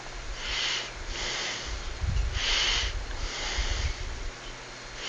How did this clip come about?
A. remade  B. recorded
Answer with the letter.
B